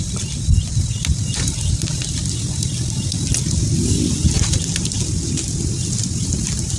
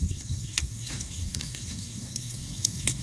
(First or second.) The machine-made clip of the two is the second